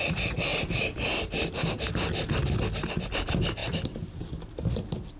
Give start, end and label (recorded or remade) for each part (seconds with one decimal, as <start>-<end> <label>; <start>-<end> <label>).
0.0-5.2 recorded